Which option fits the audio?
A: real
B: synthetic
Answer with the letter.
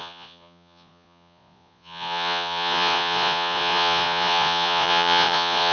B